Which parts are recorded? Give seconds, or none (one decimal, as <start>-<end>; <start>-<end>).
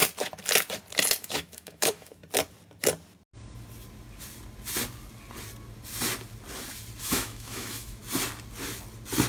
0.0-1.2; 2.2-7.0; 8.0-9.3